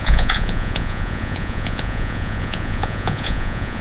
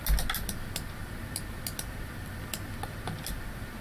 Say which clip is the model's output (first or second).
first